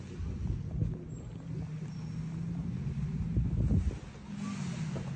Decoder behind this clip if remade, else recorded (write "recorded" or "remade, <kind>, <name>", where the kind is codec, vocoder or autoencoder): recorded